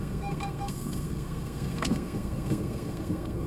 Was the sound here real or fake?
fake